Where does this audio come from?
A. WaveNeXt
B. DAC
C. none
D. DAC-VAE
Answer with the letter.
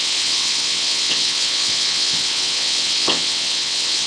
A